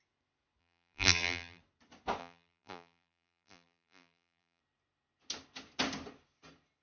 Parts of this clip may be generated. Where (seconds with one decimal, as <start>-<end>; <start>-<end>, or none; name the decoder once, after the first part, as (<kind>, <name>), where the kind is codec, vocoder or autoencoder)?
0.6-1.6 (vocoder, BigVGAN v2); 2.2-4.6